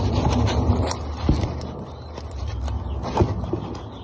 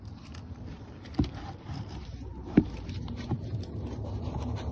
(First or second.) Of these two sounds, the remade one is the second